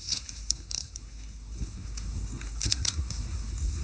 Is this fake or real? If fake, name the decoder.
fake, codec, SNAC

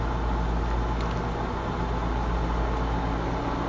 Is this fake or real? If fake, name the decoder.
real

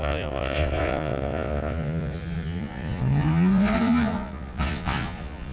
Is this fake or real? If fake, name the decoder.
fake, vocoder, Vocos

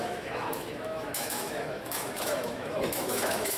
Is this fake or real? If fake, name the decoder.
fake, autoencoder, DAC-VAE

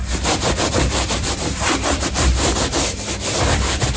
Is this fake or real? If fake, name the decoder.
fake, vocoder, BigVGAN v2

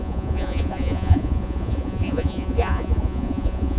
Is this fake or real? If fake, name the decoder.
fake, vocoder, Vocos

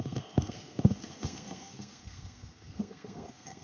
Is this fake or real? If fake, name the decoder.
fake, codec, SNAC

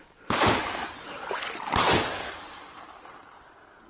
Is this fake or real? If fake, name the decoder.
real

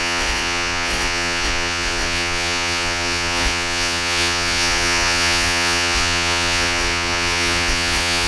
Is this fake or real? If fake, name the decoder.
fake, vocoder, Vocos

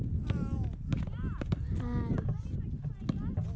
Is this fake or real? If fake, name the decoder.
real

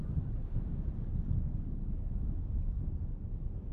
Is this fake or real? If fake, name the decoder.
real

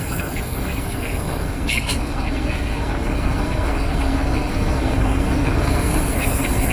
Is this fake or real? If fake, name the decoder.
fake, codec, SNAC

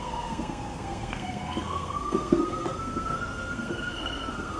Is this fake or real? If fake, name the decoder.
fake, codec, SNAC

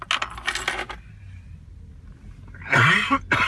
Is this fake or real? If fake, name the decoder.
real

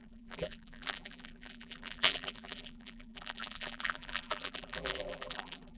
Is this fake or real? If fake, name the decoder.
fake, vocoder, BigVGAN v2